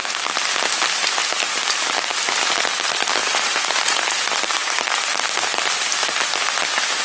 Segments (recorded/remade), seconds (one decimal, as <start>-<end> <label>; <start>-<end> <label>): 0.0-3.2 recorded; 3.2-4.0 remade; 4.0-7.0 recorded